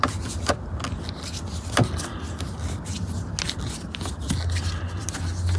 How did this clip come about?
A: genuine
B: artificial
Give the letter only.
A